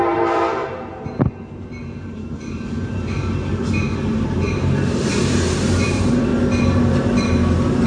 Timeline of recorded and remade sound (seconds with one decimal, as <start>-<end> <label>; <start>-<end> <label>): 0.0-6.3 remade; 6.3-6.8 recorded; 6.8-7.9 remade